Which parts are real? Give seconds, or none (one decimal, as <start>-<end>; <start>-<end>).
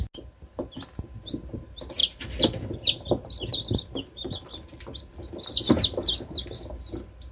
0.0-2.0; 5.3-7.3